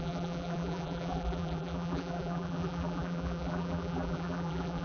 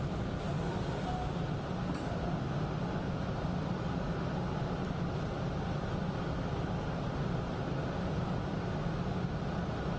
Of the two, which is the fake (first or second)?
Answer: first